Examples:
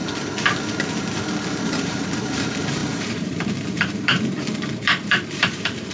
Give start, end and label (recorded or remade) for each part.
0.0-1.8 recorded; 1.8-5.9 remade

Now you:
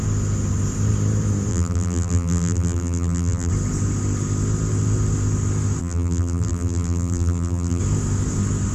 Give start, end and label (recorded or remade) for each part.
0.0-1.5 recorded; 1.5-3.5 remade; 3.5-5.8 recorded; 5.8-7.8 remade; 7.8-8.7 recorded

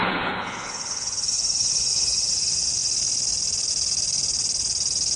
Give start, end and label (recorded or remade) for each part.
0.0-2.3 remade; 2.3-5.2 recorded